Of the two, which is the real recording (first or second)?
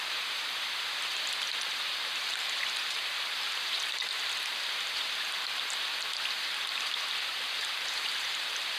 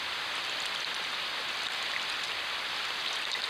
second